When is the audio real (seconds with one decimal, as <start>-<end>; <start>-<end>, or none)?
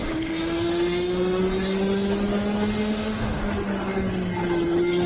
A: 1.4-2.8; 3.4-5.1